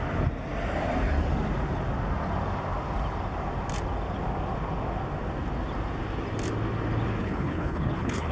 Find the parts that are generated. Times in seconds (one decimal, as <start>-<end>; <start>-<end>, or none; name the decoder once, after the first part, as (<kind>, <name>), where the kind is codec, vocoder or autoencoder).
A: 7.2-8.3 (codec, HILCodec)